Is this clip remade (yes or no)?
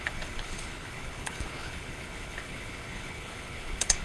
yes